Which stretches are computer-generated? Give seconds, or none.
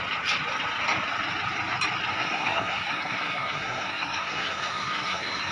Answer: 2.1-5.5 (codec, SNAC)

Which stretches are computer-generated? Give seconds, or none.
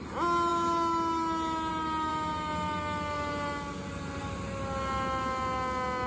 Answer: none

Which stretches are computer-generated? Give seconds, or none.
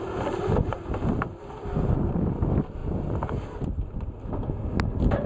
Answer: none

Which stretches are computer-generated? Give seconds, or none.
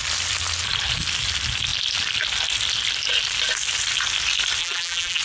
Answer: 4.6-5.2 (vocoder, BigVGAN v2)